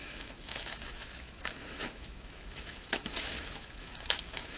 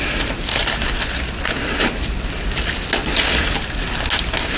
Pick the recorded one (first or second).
second